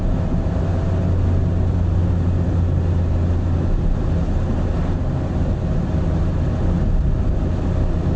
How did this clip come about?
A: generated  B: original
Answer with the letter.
B